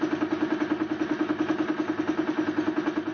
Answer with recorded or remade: recorded